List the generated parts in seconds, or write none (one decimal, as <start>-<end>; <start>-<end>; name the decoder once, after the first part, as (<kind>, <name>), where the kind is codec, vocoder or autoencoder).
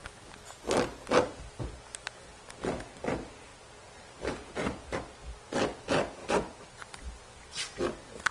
3.5-4.8 (vocoder, BigVGAN v2); 6.2-7.2